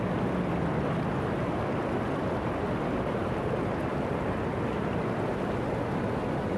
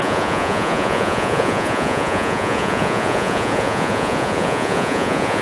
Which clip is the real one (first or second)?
first